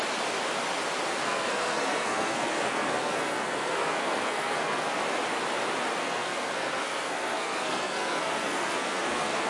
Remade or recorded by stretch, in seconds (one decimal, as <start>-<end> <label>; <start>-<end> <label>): 0.0-1.2 recorded; 1.2-5.0 remade; 5.0-6.0 recorded; 6.0-9.5 remade

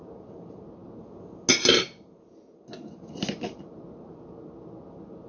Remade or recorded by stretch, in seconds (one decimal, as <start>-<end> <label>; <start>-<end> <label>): 0.0-5.3 recorded